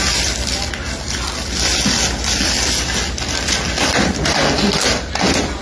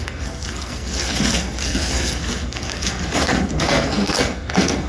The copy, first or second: second